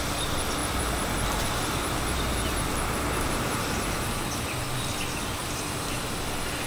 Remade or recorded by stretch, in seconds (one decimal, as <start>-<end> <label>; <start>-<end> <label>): 0.0-0.6 recorded; 0.6-4.6 remade; 4.6-5.4 recorded; 5.4-5.9 remade; 5.9-6.7 recorded